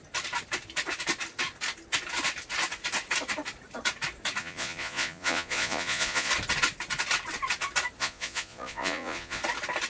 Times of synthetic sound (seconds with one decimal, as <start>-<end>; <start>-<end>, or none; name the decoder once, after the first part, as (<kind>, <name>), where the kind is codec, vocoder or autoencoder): 4.4-6.3 (vocoder, Vocos); 8.0-9.4